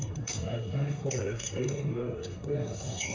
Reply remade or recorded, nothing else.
remade